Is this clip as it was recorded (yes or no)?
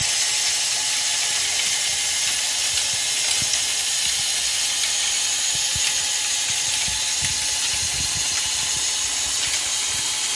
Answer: yes